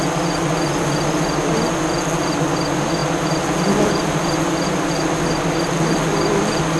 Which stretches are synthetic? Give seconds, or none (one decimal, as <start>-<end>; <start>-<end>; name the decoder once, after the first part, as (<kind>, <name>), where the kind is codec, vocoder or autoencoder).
none